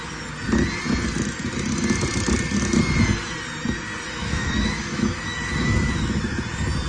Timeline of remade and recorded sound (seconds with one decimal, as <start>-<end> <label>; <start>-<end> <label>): 0.0-4.2 recorded; 4.2-6.4 remade; 6.4-6.9 recorded